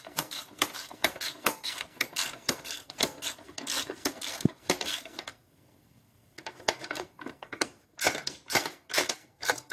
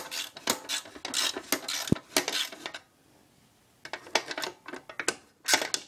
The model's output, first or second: first